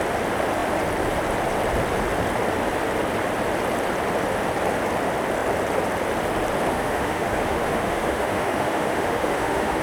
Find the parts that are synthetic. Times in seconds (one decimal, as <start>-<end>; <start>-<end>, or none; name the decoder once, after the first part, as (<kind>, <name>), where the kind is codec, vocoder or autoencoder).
6.7-9.8 (autoencoder, DAC-VAE)